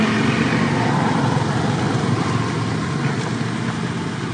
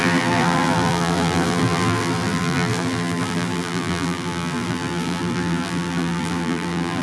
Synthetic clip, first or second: second